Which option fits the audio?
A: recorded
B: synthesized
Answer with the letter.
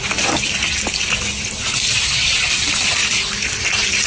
A